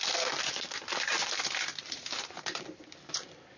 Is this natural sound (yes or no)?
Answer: yes